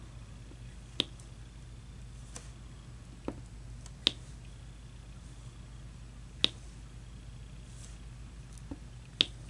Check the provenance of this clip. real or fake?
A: real